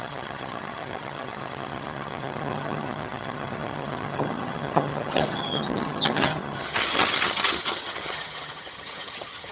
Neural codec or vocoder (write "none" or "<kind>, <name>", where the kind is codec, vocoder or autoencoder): vocoder, HiFi-GAN